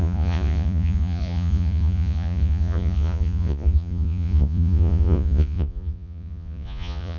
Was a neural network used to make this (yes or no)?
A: yes